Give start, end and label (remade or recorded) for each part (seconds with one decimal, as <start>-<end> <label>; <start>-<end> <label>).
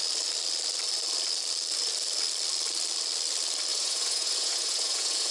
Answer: 0.0-3.7 recorded; 3.7-5.3 remade